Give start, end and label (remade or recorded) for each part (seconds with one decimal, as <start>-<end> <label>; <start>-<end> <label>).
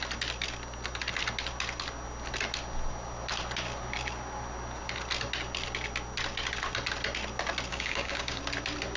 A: 0.0-7.7 recorded; 7.7-8.4 remade; 8.4-9.0 recorded